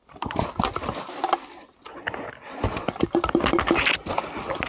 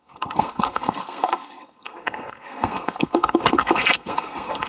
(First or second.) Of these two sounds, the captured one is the first